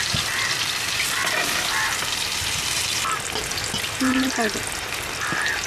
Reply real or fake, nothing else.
fake